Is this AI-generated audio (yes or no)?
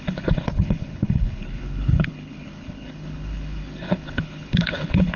yes